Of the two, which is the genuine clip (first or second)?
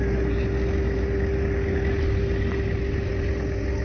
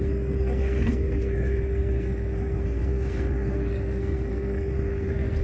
first